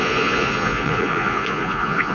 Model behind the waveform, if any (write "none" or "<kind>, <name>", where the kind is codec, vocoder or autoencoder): vocoder, Vocos